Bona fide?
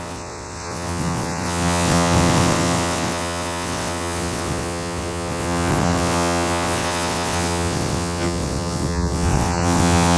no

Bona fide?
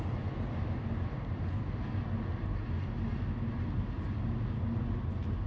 yes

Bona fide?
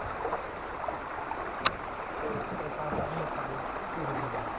yes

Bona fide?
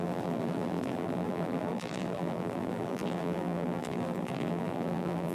no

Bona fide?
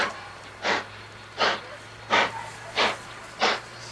yes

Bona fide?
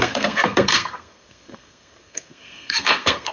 no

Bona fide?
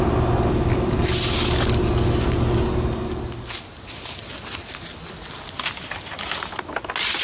yes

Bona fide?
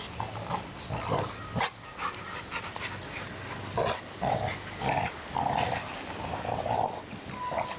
yes